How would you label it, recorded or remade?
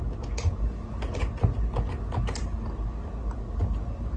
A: recorded